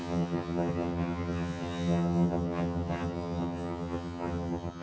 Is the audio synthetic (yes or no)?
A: yes